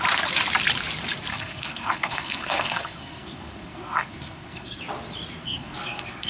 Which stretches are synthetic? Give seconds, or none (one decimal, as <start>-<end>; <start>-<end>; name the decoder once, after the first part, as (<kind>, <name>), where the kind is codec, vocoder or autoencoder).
1.3-4.8 (codec, SNAC); 5.4-6.3